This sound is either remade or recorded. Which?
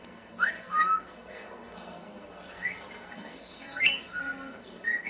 remade